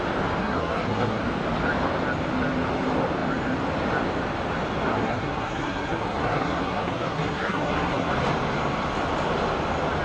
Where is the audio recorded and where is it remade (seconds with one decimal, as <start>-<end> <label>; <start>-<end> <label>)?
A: 0.0-0.4 recorded; 0.4-1.2 remade; 1.2-4.9 recorded; 4.9-8.1 remade; 8.1-10.0 recorded